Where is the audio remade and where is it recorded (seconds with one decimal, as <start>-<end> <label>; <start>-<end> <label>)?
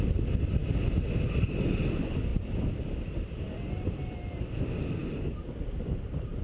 0.0-6.4 recorded